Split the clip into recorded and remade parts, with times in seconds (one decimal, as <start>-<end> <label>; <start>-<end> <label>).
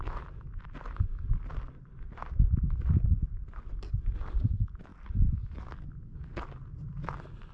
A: 0.0-7.5 recorded